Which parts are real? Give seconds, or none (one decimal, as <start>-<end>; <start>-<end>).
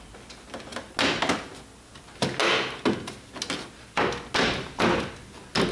0.0-5.7